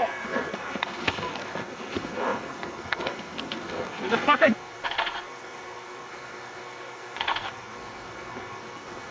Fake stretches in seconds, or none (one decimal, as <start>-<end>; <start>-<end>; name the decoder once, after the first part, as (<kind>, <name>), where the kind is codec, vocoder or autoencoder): 0.0-9.1 (codec, SNAC)